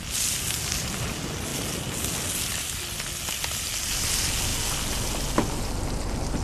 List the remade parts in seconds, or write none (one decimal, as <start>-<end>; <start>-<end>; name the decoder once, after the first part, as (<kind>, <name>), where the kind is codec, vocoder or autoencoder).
none